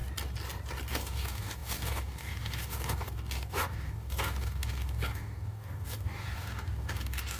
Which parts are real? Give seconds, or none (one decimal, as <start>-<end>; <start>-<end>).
0.0-0.9

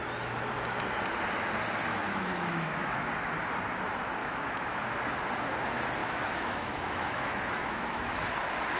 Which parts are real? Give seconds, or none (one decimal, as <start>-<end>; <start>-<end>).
0.0-1.9; 3.1-4.2; 4.8-6.0; 8.1-8.8

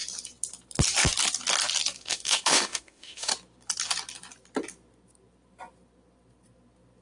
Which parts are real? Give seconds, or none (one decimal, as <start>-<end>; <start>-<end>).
0.0-2.0; 3.3-7.0

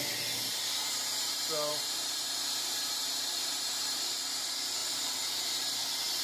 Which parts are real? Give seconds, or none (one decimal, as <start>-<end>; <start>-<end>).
0.0-0.8; 4.1-4.8; 5.8-6.2

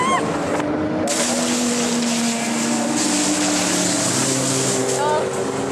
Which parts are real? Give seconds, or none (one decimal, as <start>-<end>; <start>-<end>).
0.0-5.7